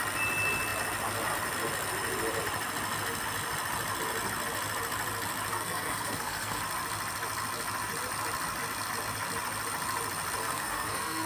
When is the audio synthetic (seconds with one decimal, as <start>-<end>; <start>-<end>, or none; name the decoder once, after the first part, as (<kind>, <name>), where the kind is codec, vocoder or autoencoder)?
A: 5.5-6.6 (codec, SNAC); 10.4-11.3

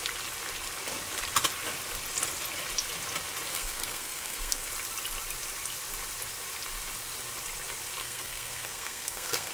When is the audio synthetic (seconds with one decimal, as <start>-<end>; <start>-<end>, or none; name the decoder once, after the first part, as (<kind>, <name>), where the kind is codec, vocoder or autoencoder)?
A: 3.5-4.7 (codec, SNAC); 8.0-9.5

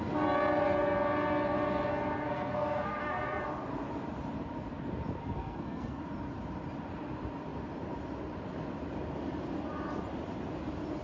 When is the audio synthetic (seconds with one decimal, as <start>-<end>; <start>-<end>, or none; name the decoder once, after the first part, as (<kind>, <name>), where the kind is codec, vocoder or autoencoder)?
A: 2.2-3.4 (codec, SNAC); 5.2-6.0

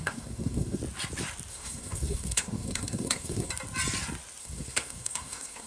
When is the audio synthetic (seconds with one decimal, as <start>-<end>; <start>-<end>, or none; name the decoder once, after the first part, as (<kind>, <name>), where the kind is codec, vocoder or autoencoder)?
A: 0.0-0.8 (codec, SNAC); 1.5-3.5; 4.4-5.7

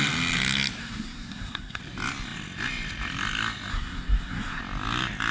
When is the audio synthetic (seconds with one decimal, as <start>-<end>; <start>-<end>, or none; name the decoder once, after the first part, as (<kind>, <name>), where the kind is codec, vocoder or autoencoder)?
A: 0.8-1.8 (codec, SNAC); 3.7-4.6

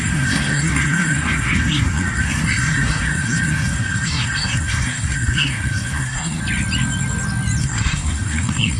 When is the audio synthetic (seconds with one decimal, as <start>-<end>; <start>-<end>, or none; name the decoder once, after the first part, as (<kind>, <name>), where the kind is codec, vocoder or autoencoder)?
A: 0.0-6.4 (codec, SNAC); 7.6-8.8

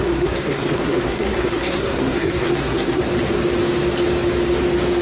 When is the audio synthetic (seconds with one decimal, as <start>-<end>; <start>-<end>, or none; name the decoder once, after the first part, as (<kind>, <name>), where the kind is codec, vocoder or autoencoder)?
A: 0.0-3.0 (codec, SNAC)

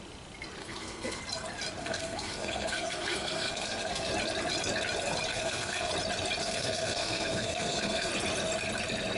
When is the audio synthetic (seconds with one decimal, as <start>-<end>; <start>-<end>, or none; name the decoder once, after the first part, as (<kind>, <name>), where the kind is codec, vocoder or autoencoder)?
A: 0.6-1.2 (codec, SNAC); 1.8-4.1; 5.3-5.9; 6.4-8.1